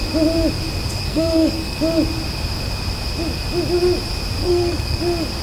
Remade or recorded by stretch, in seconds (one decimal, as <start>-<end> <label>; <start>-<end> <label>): 0.0-1.0 recorded; 1.0-1.8 remade; 1.8-4.4 recorded; 4.4-5.0 remade; 5.0-5.4 recorded